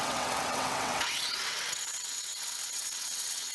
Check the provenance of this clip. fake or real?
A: fake